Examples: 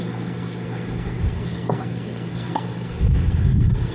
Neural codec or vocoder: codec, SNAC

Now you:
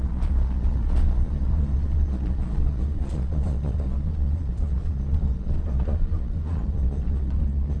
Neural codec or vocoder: vocoder, Vocos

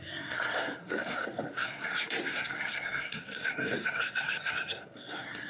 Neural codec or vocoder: codec, SNAC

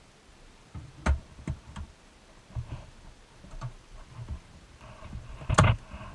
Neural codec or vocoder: none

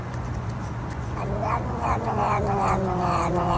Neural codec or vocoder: vocoder, Vocos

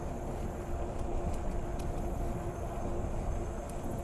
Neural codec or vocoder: none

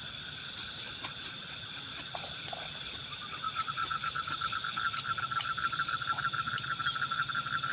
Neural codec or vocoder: none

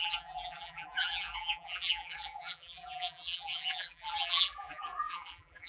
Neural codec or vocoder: vocoder, BigVGAN v2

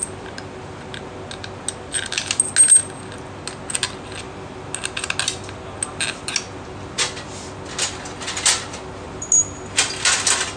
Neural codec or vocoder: none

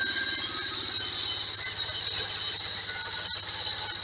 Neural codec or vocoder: none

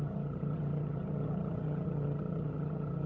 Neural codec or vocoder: vocoder, HiFi-GAN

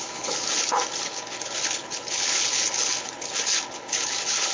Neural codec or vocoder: codec, HILCodec